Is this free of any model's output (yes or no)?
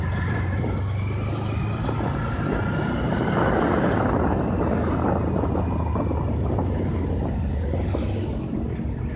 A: yes